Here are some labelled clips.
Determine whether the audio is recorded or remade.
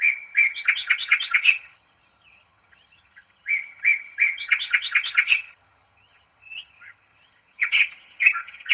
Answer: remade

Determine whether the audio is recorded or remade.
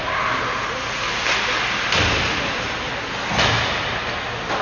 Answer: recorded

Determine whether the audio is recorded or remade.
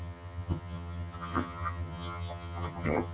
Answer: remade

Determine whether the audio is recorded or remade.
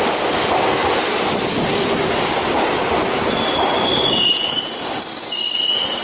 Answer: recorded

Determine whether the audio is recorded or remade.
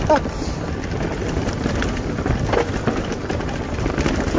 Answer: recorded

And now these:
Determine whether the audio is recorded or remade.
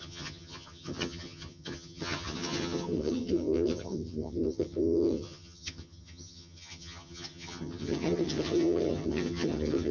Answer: remade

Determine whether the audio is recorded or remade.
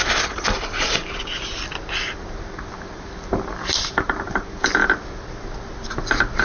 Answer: recorded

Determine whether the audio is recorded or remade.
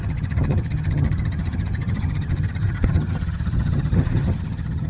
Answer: remade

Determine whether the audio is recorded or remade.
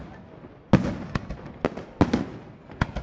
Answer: recorded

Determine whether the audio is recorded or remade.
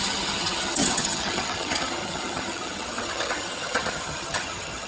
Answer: remade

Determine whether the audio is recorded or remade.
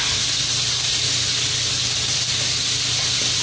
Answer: recorded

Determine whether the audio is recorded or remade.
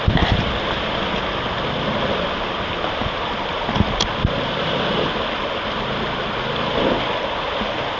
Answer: recorded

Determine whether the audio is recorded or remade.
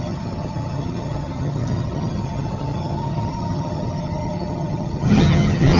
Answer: remade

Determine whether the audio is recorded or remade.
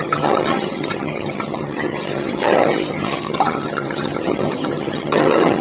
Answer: remade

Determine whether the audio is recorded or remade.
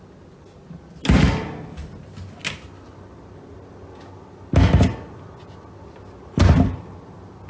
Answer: recorded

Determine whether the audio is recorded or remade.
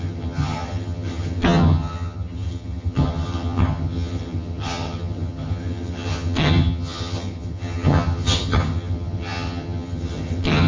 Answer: remade